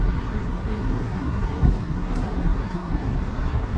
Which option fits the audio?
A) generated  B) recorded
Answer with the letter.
A